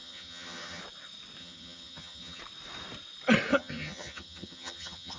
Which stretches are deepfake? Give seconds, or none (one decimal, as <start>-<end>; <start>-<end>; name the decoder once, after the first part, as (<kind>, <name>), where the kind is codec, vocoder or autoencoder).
0.0-0.8 (vocoder, HiFi-GAN); 1.4-2.4; 3.5-5.2

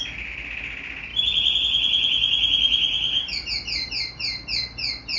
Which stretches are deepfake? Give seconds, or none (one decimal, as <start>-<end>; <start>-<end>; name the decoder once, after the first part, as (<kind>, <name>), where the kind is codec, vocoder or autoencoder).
1.1-3.9 (vocoder, BigVGAN v2)

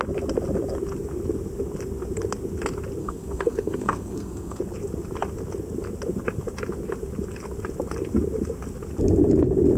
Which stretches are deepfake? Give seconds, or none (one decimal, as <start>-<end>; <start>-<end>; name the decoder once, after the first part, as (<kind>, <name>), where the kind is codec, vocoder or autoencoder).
3.0-4.6 (codec, SNAC)